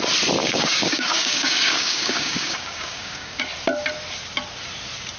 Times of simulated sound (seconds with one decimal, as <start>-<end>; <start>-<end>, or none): 0.4-3.4